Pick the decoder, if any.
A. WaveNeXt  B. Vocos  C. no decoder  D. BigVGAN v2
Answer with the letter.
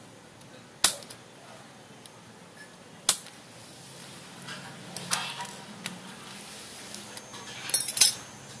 C